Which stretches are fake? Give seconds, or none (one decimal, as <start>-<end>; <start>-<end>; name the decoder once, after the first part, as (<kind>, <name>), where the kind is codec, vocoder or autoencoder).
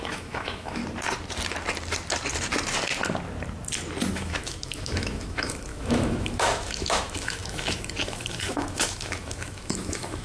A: 0.0-0.8 (autoencoder, DAC-VAE); 4.1-10.2